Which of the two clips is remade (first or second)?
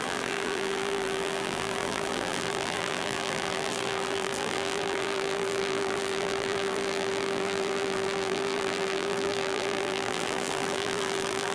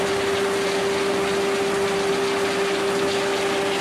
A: first